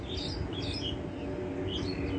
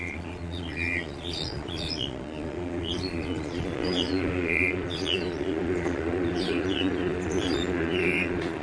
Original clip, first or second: first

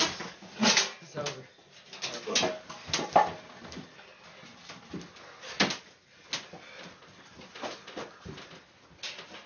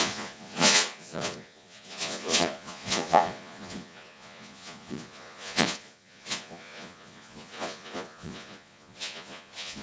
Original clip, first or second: first